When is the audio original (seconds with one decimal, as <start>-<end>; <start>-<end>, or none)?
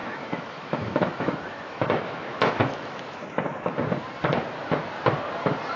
3.4-5.8